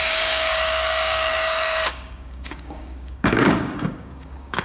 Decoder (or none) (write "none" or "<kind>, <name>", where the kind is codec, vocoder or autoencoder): codec, DAC